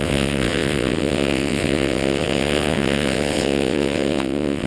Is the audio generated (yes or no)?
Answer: yes